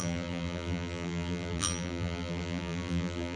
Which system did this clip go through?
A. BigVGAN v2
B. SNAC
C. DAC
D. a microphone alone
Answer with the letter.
A